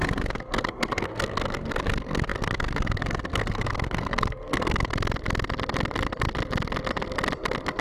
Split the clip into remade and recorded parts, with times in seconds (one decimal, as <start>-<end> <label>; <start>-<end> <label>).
0.0-4.9 remade; 4.9-7.8 recorded